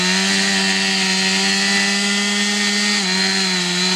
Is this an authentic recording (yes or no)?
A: yes